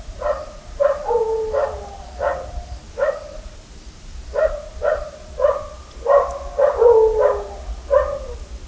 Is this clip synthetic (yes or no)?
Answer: no